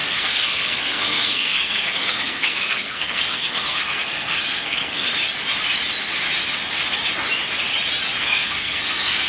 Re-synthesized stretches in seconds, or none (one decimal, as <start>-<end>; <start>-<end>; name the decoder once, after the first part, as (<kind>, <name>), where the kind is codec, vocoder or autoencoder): 0.0-5.1 (codec, SNAC); 8.2-9.3